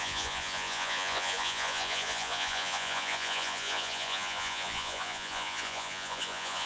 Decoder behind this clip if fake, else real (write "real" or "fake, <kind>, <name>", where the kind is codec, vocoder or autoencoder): fake, vocoder, Vocos